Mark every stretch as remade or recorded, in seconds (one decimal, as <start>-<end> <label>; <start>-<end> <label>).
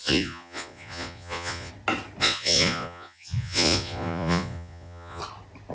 0.0-1.7 remade; 1.7-2.2 recorded; 2.2-5.2 remade; 5.2-5.7 recorded